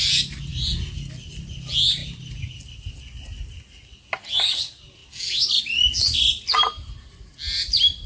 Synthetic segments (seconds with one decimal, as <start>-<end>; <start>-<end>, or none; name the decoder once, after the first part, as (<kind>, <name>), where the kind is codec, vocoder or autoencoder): none